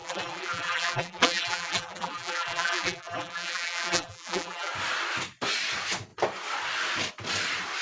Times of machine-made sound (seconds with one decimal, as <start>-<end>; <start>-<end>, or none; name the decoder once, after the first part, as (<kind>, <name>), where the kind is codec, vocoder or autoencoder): 0.0-4.7 (vocoder, BigVGAN v2)